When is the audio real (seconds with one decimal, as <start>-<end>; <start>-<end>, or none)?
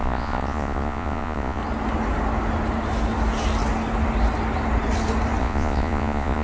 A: 1.6-5.4